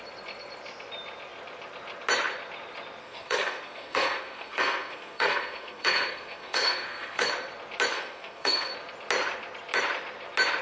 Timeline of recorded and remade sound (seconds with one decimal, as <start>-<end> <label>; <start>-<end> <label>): 0.0-3.0 recorded; 3.0-7.3 remade; 7.3-7.9 recorded; 7.9-8.7 remade; 8.7-10.6 recorded